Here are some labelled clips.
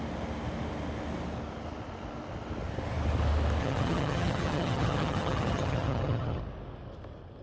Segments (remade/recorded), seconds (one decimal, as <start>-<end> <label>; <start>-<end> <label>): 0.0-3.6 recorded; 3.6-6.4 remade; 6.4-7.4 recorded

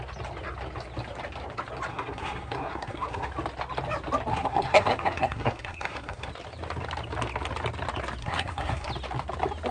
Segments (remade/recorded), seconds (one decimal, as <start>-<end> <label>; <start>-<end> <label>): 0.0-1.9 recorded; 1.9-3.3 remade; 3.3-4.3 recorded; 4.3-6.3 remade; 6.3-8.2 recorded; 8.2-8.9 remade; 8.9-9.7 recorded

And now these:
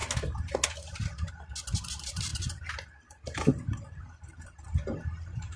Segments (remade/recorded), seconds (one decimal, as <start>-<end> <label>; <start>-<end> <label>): 0.0-5.6 recorded

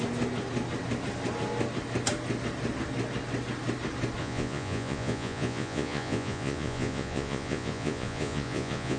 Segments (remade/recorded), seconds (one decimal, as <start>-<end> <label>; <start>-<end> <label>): 0.0-4.2 recorded; 4.2-9.0 remade

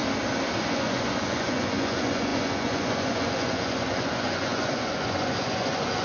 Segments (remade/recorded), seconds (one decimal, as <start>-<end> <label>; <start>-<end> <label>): 0.0-0.6 recorded; 0.6-6.0 remade

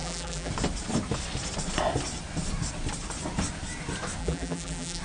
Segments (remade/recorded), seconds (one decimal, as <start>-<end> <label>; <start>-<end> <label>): 0.0-0.5 remade; 0.5-4.2 recorded; 4.2-5.0 remade

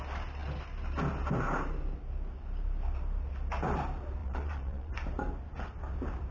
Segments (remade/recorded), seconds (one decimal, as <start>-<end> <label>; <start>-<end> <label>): 0.0-4.2 recorded; 4.2-4.9 remade; 4.9-6.3 recorded